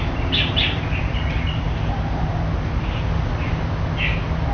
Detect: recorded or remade recorded